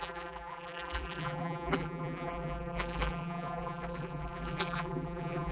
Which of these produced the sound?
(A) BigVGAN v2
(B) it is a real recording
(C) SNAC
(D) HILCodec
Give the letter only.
A